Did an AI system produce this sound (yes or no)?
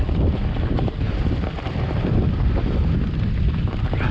no